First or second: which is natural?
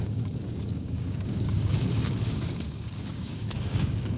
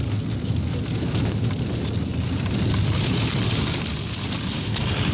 second